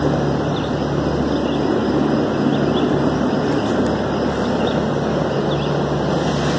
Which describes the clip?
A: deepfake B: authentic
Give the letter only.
B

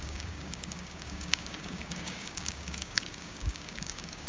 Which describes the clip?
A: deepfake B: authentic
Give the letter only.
A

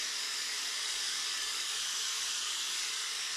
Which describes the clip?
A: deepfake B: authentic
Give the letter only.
A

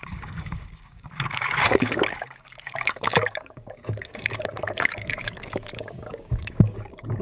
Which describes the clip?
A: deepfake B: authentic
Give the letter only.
A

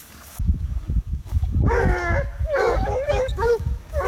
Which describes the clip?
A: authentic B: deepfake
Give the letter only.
B